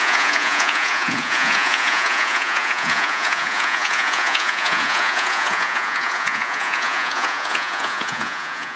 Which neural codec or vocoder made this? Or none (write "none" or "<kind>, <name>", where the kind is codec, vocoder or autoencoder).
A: vocoder, Vocos